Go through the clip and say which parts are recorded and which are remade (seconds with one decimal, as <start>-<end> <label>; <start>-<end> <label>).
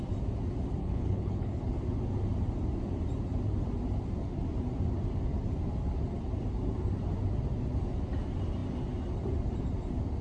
0.0-0.8 recorded; 0.8-1.6 remade; 1.6-10.2 recorded